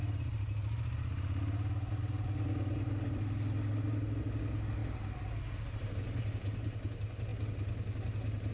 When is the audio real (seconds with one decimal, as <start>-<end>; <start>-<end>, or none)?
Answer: 0.0-8.5